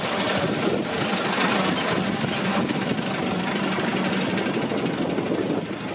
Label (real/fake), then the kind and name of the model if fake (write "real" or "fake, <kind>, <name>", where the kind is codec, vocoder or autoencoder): real